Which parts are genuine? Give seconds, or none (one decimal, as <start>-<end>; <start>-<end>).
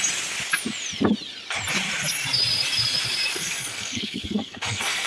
0.0-3.3